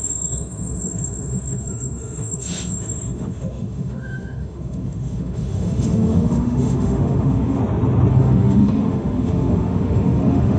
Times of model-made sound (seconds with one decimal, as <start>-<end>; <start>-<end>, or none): 0.0-7.6; 8.1-10.6